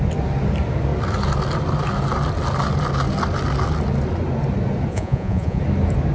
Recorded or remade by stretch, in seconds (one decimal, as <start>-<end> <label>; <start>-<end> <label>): 0.0-4.9 recorded; 4.9-5.6 remade; 5.6-6.1 recorded